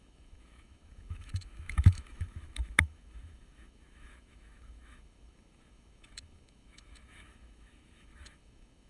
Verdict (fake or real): fake